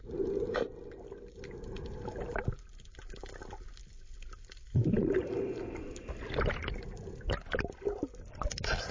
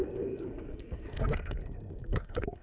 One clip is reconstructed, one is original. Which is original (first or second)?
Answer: first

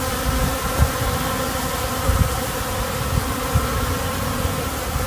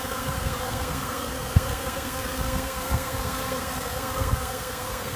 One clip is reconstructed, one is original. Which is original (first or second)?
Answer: first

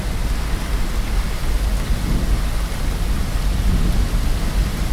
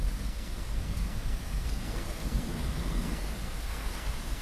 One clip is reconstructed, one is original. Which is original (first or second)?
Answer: first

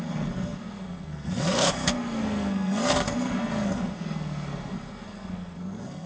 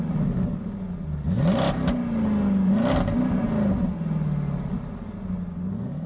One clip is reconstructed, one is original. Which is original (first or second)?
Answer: second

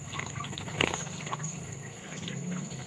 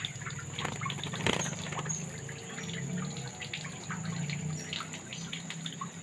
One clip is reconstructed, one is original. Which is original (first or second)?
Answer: second